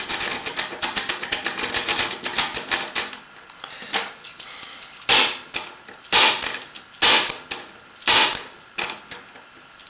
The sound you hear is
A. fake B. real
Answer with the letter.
B